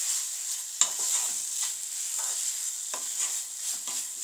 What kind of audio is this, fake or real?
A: real